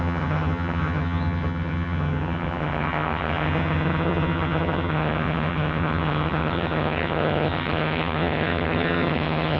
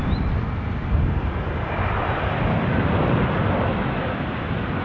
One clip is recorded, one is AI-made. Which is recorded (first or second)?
second